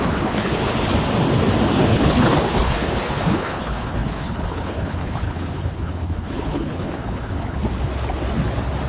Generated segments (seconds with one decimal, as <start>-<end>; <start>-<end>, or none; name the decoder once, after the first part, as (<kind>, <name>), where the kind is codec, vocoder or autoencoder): 0.0-0.9 (codec, HILCodec); 1.9-7.6